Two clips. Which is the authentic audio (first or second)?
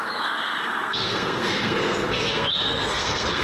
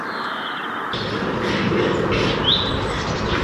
second